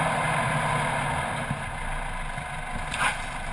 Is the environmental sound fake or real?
real